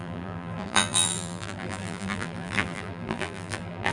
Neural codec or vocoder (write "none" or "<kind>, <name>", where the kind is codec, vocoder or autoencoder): vocoder, BigVGAN v2